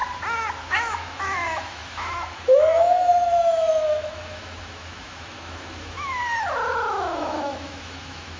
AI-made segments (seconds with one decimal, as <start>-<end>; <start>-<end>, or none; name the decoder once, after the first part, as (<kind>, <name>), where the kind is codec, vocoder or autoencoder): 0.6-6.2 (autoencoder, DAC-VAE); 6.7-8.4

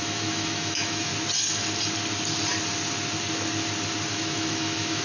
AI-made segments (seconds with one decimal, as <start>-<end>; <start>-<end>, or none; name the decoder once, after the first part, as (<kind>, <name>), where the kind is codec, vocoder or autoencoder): 0.0-1.1 (autoencoder, DAC-VAE); 4.1-5.0

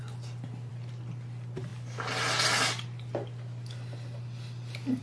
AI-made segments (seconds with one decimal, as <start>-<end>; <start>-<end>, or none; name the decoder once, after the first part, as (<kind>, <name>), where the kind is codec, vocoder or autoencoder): none

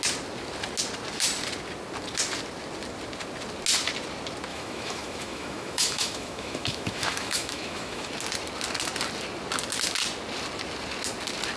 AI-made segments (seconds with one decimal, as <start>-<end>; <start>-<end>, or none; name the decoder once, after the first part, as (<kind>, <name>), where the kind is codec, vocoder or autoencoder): 4.5-8.1 (autoencoder, DAC-VAE)

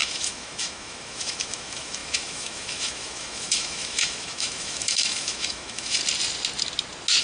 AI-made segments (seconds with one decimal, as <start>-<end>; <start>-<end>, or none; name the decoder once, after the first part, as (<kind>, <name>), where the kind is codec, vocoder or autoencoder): 0.0-6.0 (autoencoder, DAC-VAE)